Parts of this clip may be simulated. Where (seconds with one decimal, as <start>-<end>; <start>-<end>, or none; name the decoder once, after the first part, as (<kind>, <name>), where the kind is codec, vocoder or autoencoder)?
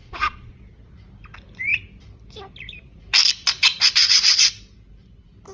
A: 0.0-0.6 (vocoder, Vocos)